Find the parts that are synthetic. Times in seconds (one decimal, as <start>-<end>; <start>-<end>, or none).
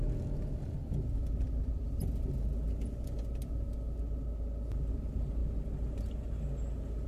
none